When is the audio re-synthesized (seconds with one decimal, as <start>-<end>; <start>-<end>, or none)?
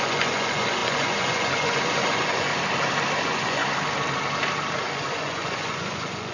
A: 0.0-2.5; 3.2-3.6; 4.8-6.3